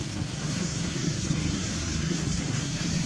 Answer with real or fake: fake